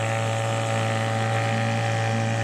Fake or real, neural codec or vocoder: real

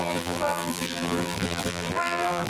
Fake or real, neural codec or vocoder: fake, vocoder, BigVGAN v2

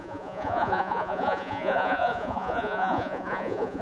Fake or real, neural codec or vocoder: fake, vocoder, Vocos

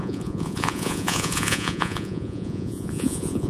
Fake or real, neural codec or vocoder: fake, vocoder, Vocos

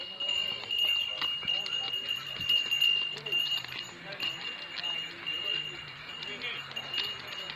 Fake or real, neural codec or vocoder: real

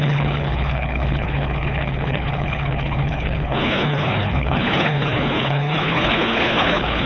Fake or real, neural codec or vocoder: fake, codec, HILCodec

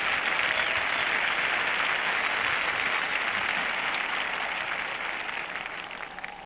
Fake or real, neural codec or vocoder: real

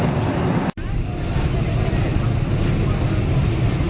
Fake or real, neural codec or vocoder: real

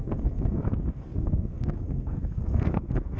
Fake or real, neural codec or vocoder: fake, codec, SNAC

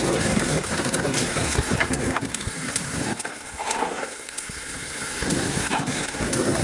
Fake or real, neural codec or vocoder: fake, codec, SNAC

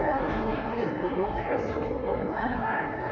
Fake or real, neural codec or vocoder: fake, codec, SNAC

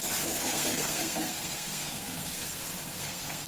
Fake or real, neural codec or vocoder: fake, codec, SNAC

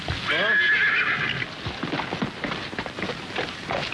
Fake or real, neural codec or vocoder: real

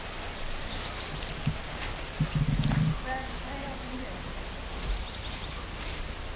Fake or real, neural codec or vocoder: real